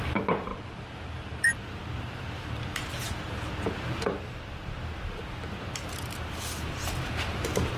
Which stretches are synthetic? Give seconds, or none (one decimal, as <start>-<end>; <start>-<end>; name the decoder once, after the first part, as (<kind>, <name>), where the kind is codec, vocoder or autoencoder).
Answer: 0.5-4.3 (vocoder, BigVGAN v2)